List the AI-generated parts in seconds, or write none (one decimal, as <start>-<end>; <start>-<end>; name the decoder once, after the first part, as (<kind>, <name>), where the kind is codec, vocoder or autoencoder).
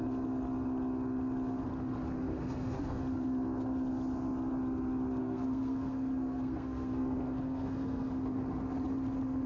2.3-3.0 (codec, SNAC); 5.2-8.4